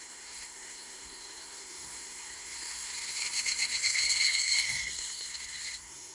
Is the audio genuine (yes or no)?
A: no